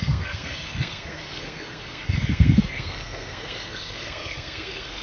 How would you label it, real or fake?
fake